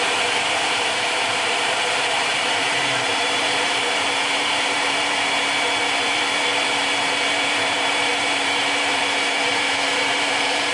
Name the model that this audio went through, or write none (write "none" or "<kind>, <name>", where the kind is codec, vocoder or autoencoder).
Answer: vocoder, BigVGAN v2